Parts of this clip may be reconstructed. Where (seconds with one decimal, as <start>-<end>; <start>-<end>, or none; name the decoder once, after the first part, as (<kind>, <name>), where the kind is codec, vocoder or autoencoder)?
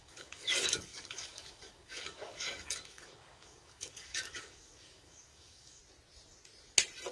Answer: 0.0-5.8 (codec, DAC)